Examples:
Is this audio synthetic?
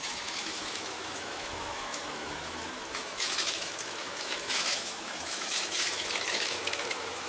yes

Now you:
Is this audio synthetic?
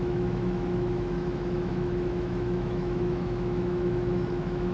yes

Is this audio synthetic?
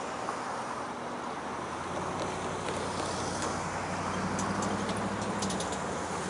no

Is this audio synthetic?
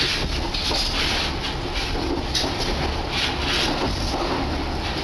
no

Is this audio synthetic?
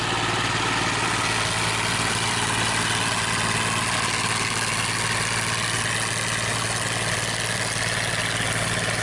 no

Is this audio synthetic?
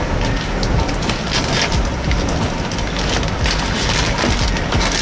no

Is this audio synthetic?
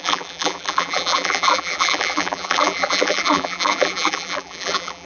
yes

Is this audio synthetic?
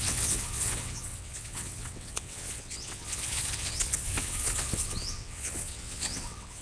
yes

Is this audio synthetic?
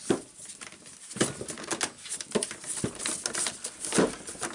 no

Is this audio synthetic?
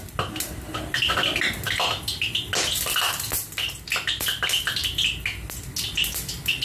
no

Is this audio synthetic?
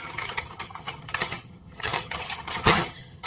yes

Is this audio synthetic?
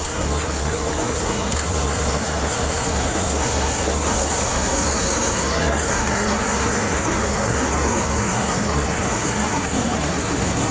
yes